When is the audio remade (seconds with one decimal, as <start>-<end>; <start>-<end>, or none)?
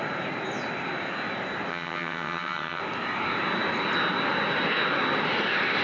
1.7-2.8